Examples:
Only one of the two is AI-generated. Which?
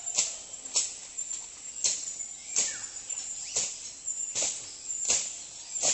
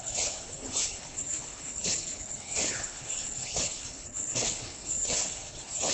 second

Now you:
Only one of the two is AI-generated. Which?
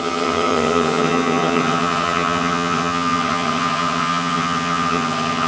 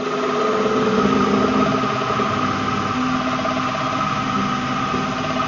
first